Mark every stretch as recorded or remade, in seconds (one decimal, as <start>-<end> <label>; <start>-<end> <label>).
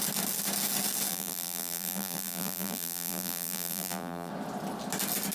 0.0-1.1 recorded; 1.1-4.3 remade; 4.3-5.3 recorded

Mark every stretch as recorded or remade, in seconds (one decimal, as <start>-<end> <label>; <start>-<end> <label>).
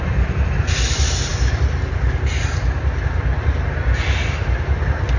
0.0-5.2 recorded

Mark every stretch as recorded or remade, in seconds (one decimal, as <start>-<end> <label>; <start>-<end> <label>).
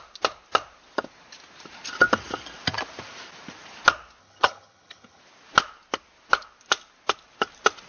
0.0-4.2 recorded; 4.2-5.2 remade; 5.2-7.9 recorded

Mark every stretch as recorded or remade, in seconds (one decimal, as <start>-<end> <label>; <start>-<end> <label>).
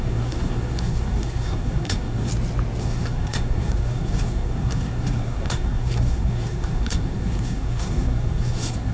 0.0-2.3 remade; 2.3-2.8 recorded; 2.8-8.9 remade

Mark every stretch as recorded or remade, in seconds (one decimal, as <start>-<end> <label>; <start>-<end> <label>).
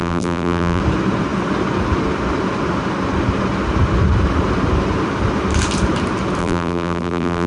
0.0-0.8 remade; 0.8-6.4 recorded; 6.4-7.5 remade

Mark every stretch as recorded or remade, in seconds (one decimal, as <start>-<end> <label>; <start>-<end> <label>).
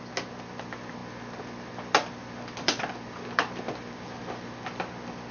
0.0-5.3 recorded